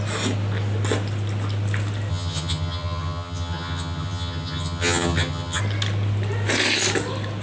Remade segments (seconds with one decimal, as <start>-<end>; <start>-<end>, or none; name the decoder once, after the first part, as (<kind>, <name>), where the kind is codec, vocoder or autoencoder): 2.1-5.6 (vocoder, HiFi-GAN)